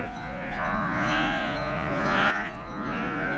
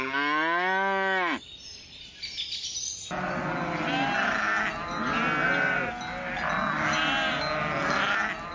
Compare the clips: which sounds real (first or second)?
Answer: second